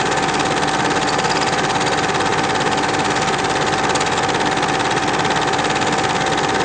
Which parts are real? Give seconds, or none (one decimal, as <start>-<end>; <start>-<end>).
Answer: 0.0-6.6